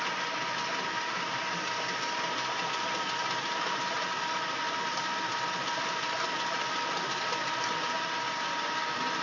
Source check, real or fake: real